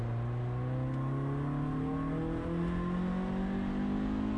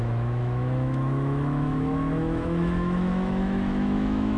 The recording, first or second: first